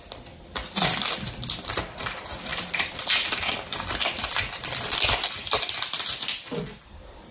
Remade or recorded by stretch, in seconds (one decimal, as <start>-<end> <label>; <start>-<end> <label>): 0.0-7.3 recorded